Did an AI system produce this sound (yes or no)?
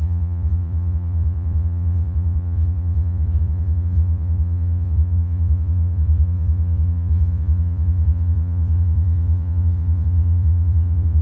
yes